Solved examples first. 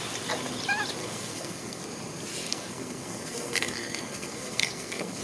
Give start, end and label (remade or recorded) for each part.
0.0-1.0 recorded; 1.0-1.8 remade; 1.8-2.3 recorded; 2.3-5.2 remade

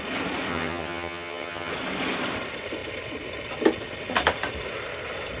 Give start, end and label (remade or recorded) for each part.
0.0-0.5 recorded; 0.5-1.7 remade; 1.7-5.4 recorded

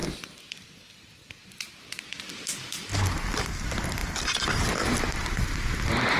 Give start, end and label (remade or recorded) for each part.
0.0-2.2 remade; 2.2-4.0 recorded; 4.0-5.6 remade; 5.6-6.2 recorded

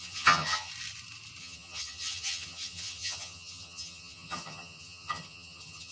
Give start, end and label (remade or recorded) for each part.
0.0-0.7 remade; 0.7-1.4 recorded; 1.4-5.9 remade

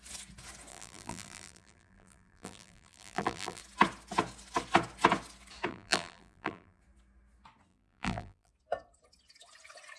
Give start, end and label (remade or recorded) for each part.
0.0-0.7 recorded; 0.7-3.6 remade; 3.6-5.7 recorded; 5.7-6.8 remade; 6.8-7.7 recorded; 7.7-8.5 remade; 8.5-10.0 recorded

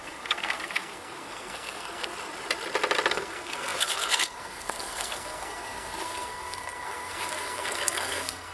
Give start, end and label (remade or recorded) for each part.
0.0-2.1 remade; 2.1-3.1 recorded; 3.1-8.5 remade

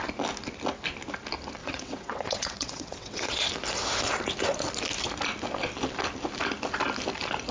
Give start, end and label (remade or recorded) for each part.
0.0-1.6 recorded; 1.6-3.5 remade; 3.5-7.5 recorded

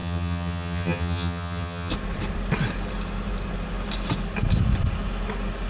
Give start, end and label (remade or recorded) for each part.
0.0-1.9 remade; 1.9-5.7 recorded